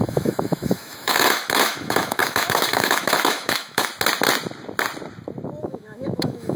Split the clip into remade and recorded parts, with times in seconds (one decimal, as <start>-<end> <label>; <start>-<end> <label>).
0.0-3.9 remade; 3.9-5.6 recorded; 5.6-6.6 remade